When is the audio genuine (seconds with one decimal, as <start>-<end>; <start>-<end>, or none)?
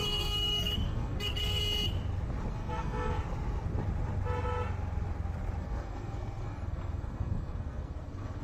1.6-2.5; 3.2-5.6